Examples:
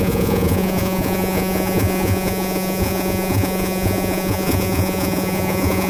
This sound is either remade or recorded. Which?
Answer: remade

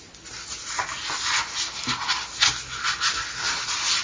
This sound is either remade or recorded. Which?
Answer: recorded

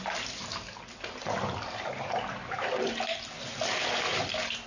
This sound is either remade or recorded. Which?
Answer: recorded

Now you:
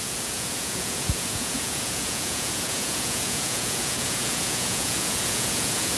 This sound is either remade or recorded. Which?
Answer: remade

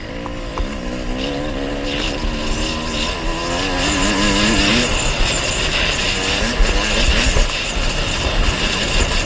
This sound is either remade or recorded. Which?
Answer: recorded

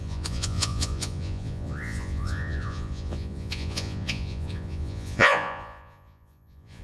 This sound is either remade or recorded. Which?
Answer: remade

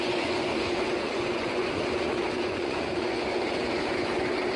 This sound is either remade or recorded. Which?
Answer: remade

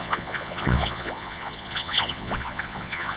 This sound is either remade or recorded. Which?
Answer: remade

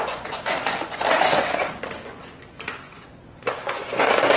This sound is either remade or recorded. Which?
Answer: remade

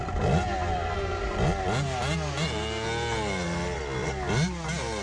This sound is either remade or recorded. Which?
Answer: recorded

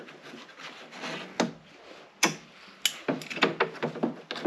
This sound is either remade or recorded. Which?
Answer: recorded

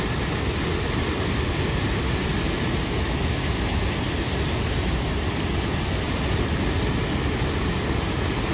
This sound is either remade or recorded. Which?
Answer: recorded